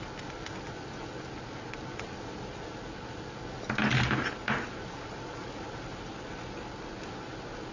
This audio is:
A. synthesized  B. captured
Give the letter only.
B